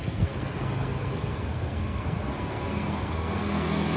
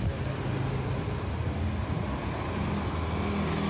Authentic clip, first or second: second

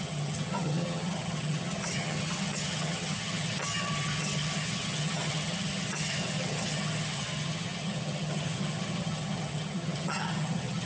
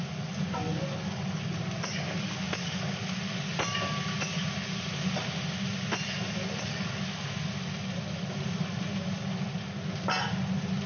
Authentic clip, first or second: second